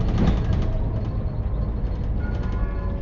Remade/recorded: recorded